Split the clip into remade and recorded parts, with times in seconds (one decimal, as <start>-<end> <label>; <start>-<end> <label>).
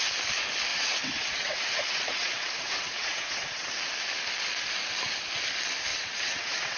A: 0.0-0.7 recorded; 0.7-3.7 remade; 3.7-5.9 recorded; 5.9-6.8 remade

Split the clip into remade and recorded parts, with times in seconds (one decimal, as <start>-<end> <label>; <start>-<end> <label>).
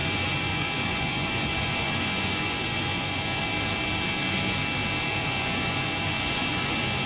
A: 0.0-3.4 remade; 3.4-5.2 recorded; 5.2-7.1 remade